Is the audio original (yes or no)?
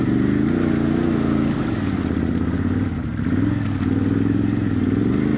yes